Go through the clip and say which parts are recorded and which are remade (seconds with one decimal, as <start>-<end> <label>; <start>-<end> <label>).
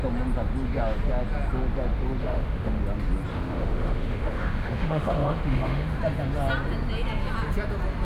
0.0-2.2 recorded; 2.2-2.8 remade; 2.8-3.3 recorded; 3.3-6.0 remade; 6.0-8.0 recorded